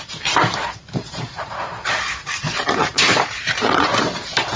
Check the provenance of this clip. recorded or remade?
remade